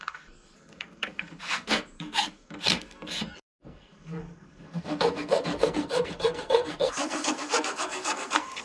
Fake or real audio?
fake